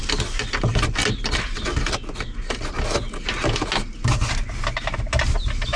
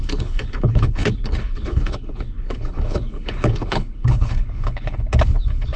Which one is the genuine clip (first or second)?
first